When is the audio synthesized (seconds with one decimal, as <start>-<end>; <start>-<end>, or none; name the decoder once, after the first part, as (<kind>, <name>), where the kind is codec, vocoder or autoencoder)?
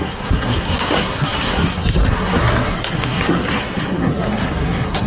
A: 0.0-5.1 (codec, SNAC)